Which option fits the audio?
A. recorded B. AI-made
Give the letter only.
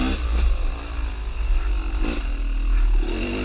A